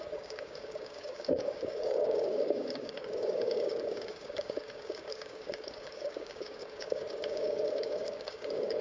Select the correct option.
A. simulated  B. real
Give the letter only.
A